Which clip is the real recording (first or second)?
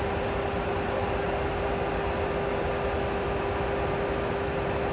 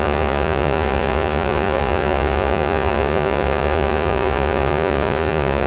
first